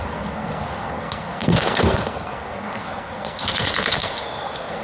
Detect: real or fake fake